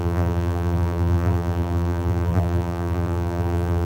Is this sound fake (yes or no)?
yes